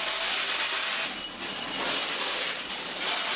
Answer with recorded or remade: recorded